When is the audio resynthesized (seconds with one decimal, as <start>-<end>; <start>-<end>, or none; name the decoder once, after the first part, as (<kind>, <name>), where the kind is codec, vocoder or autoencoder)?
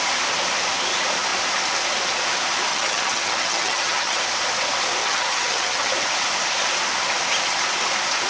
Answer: 2.7-4.2 (vocoder, HiFi-GAN); 5.0-5.9